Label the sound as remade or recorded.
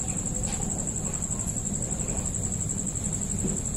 recorded